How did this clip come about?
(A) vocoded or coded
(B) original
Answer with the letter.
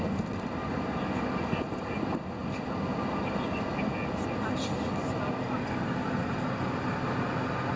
B